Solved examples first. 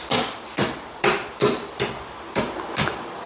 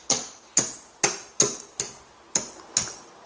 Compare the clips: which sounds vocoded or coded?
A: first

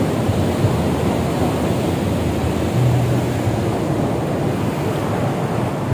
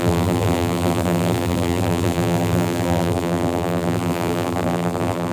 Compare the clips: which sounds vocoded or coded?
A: second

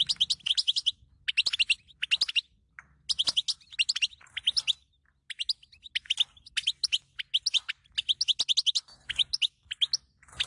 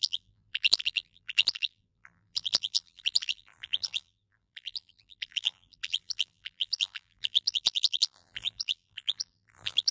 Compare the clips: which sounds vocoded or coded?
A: second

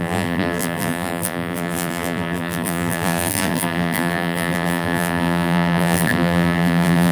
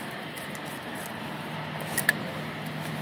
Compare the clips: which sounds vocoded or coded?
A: first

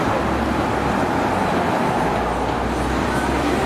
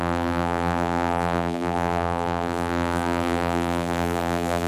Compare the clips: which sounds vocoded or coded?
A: second